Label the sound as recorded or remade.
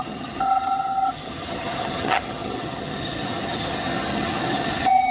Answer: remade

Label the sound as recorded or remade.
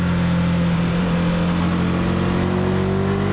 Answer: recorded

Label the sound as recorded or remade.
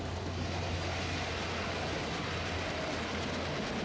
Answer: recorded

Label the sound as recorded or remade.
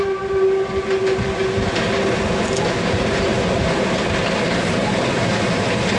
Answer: recorded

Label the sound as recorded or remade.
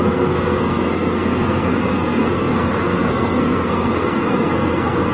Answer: remade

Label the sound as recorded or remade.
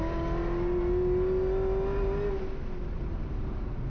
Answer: recorded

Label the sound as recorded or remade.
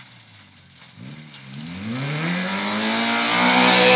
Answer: recorded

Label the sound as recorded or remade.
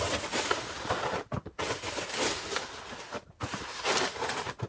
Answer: recorded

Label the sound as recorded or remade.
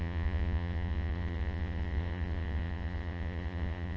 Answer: remade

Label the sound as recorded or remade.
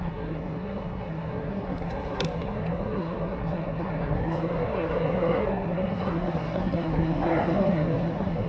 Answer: remade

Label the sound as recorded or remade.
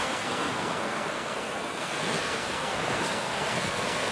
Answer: remade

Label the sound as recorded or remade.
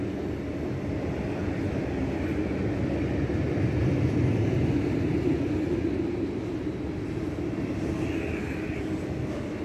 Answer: recorded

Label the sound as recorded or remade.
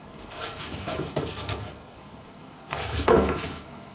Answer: remade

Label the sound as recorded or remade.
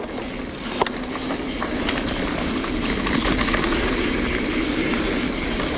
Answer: recorded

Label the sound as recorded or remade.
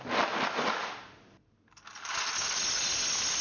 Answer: recorded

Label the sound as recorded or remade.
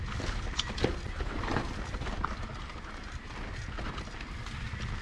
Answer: recorded